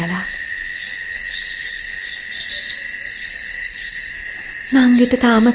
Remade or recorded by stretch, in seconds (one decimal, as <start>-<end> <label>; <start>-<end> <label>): 0.0-0.8 recorded; 0.8-2.3 remade; 2.3-3.1 recorded; 3.1-4.1 remade; 4.1-5.5 recorded